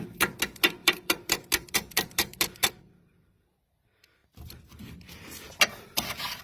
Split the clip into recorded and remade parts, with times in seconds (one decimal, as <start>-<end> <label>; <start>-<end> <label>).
0.0-0.8 recorded; 0.8-2.7 remade; 2.7-6.4 recorded